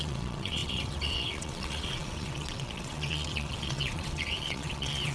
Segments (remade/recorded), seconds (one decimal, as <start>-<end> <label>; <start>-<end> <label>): 0.0-5.1 remade